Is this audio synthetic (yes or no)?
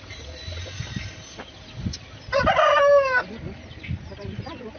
no